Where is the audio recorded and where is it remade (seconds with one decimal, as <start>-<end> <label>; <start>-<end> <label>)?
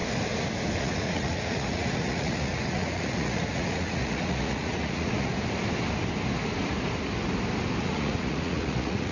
0.0-0.8 recorded; 0.8-5.3 remade; 5.3-7.8 recorded; 7.8-9.1 remade